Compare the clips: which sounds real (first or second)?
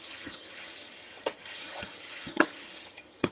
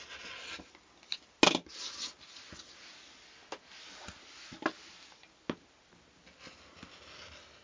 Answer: second